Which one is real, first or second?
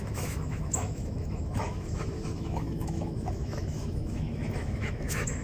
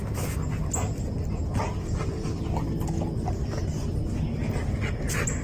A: second